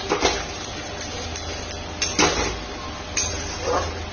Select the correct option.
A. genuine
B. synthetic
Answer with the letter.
A